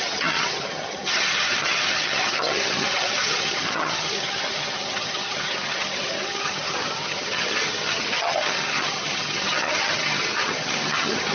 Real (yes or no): no